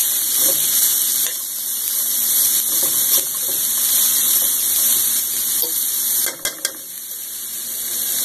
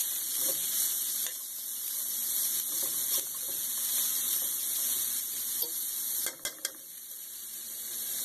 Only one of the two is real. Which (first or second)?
first